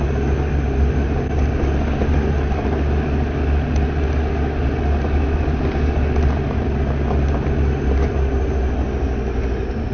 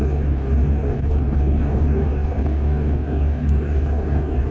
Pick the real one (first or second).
first